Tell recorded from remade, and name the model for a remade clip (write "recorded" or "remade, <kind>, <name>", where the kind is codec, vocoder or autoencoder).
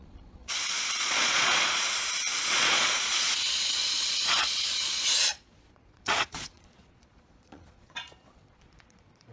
remade, vocoder, Vocos